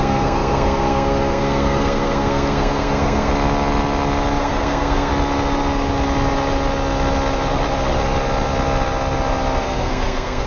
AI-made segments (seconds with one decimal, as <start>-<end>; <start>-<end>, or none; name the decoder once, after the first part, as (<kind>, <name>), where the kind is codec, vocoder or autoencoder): 0.0-3.3 (codec, SNAC); 4.4-5.1; 9.6-10.5